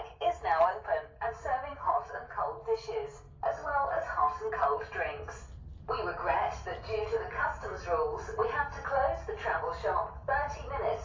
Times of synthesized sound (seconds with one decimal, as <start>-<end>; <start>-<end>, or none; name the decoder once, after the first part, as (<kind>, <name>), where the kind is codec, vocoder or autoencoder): none